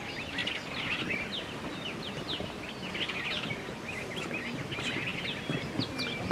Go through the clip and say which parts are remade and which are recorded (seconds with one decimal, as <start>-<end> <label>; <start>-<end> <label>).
0.0-6.3 recorded